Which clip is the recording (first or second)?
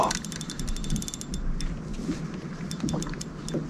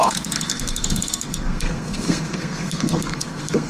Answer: first